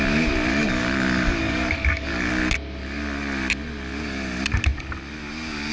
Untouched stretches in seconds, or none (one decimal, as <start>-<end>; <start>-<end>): 0.0-0.5; 2.3-5.7